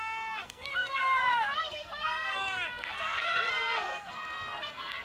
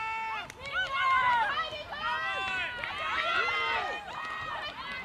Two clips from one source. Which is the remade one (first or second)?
first